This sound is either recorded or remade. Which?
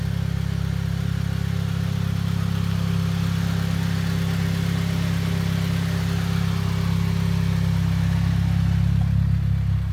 recorded